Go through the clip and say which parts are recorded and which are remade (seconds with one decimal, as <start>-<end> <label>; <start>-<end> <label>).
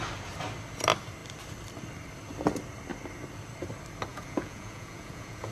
0.0-4.1 recorded; 4.1-5.5 remade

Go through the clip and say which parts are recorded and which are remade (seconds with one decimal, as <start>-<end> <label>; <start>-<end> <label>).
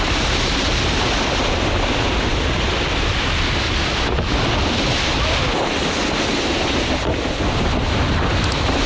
0.0-8.9 recorded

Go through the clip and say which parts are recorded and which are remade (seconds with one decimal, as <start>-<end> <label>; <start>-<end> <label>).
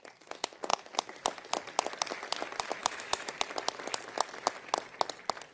0.0-2.8 recorded; 2.8-3.3 remade; 3.3-5.5 recorded